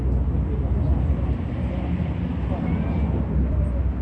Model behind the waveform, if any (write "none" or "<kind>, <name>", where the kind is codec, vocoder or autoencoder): none